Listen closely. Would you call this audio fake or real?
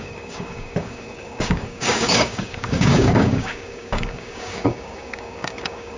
fake